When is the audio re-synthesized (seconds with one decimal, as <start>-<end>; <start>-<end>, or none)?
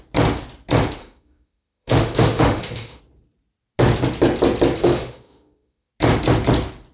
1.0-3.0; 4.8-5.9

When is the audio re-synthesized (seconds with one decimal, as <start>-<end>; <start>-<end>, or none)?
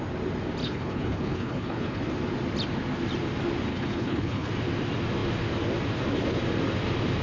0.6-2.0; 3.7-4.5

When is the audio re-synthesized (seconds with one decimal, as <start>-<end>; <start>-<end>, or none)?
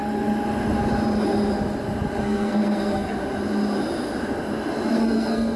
2.2-3.2; 4.9-5.6